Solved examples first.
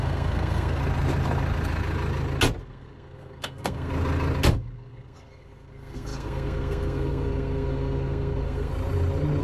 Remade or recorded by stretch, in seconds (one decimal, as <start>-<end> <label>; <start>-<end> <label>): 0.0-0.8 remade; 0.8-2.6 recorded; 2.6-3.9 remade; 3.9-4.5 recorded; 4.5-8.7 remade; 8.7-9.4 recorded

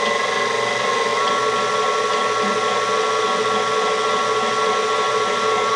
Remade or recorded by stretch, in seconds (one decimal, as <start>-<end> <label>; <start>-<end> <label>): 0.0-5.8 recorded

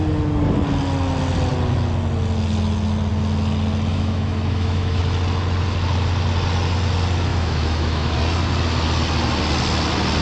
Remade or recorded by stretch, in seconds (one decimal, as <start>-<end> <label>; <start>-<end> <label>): 0.0-3.9 recorded; 3.9-5.0 remade; 5.0-7.3 recorded; 7.3-8.1 remade; 8.1-10.2 recorded

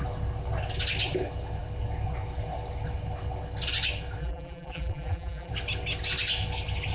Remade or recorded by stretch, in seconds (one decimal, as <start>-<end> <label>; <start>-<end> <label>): 0.0-4.2 recorded; 4.2-5.5 remade; 5.5-6.9 recorded

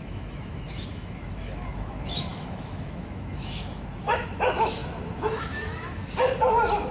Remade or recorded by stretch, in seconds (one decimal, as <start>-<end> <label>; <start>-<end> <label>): 0.0-6.0 remade; 6.0-6.9 recorded

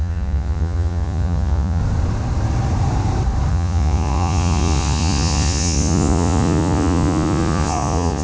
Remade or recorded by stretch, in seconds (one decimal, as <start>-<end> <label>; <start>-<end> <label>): 0.0-1.8 remade; 1.8-3.5 recorded; 3.5-8.2 remade

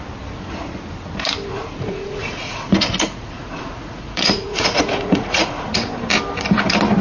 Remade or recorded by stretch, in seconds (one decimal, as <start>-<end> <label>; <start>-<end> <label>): 0.0-1.5 recorded; 1.5-5.7 remade; 5.7-7.0 recorded